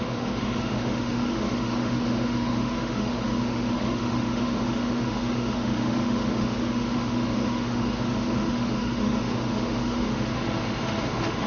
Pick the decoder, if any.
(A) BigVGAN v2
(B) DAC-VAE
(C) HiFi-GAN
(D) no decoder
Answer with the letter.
B